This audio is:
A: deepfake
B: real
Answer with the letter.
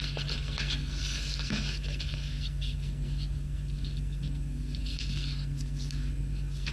A